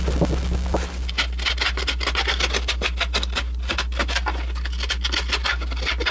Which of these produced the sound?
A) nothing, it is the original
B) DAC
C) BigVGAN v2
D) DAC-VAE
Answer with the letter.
A